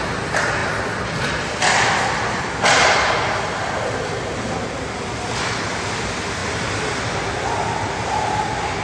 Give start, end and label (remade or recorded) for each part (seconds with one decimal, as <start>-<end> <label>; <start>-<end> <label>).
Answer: 0.0-8.8 recorded